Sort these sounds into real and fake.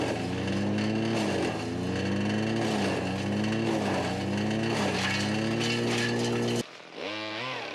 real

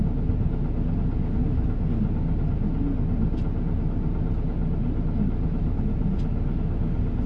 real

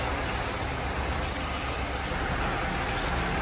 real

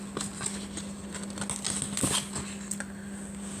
real